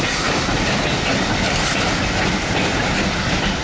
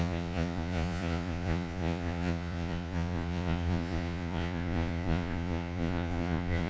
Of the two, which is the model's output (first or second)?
second